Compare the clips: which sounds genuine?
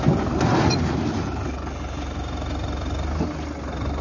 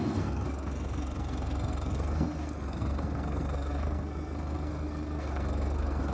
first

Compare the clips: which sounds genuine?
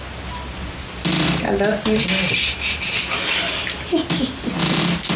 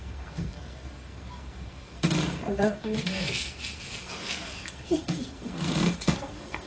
first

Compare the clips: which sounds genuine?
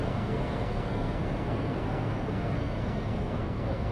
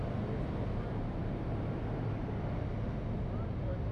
second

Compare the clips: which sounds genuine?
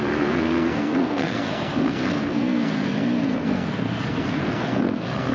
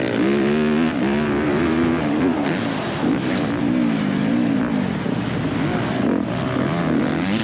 second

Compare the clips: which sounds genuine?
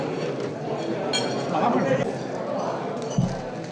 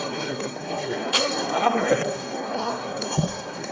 first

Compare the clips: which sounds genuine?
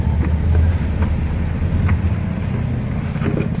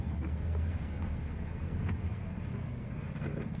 first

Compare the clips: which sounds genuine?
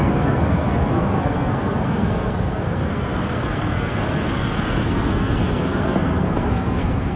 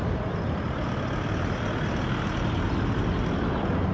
second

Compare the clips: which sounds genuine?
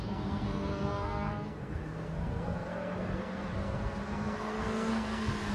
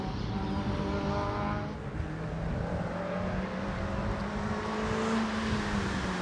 second